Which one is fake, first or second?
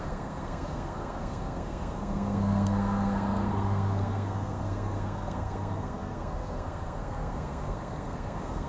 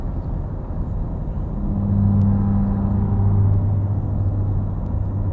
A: first